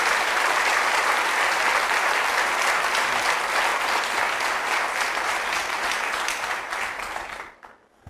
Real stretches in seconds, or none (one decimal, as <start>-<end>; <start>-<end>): 0.0-8.1